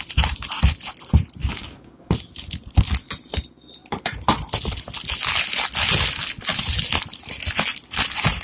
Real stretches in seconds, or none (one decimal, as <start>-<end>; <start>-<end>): 0.0-1.4; 2.1-8.4